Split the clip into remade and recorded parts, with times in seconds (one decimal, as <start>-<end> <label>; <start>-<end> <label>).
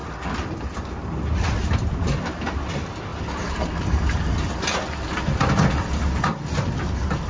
0.0-7.3 recorded